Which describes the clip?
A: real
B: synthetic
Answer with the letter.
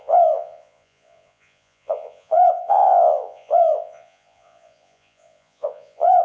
B